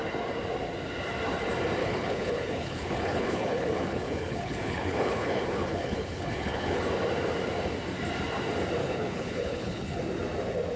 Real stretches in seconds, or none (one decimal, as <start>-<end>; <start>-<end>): 0.0-1.8; 6.8-8.8; 10.0-10.8